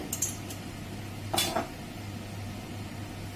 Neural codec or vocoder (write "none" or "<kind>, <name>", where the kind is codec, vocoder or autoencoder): none